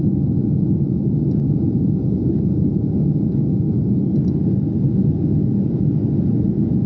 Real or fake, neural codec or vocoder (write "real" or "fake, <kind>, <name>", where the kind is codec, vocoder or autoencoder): real